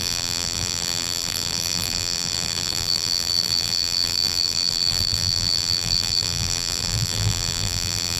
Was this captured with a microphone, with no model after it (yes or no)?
no